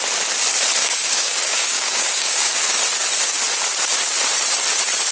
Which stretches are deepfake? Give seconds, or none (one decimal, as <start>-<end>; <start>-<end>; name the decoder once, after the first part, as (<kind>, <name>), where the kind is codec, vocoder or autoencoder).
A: 0.8-2.8 (codec, DAC)

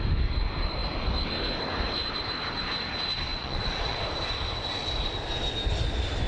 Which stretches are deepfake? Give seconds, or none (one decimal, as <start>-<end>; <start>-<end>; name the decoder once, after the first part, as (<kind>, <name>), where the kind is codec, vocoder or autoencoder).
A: 3.3-4.0 (vocoder, Vocos)

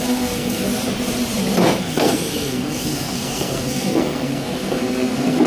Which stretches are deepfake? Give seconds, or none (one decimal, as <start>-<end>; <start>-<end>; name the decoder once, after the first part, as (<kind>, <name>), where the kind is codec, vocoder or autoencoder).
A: 0.0-0.7 (codec, SNAC); 1.8-5.5

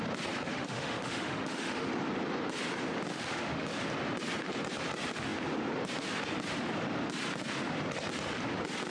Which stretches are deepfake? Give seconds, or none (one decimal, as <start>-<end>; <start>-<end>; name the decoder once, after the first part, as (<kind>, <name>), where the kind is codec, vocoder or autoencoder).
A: 0.5-1.9 (autoencoder, DAC-VAE); 3.1-3.7

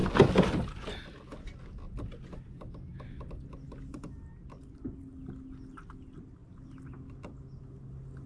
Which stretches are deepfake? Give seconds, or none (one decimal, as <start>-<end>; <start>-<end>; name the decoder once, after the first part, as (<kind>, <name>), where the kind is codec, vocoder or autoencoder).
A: none

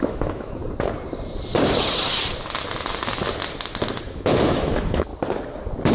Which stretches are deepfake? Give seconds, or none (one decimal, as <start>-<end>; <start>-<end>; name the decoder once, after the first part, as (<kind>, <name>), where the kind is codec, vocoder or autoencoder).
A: 0.0-0.6 (autoencoder, DAC-VAE); 4.1-5.1

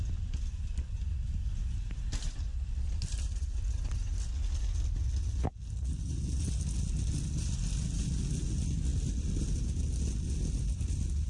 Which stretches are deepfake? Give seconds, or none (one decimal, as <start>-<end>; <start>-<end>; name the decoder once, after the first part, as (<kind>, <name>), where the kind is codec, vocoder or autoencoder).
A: none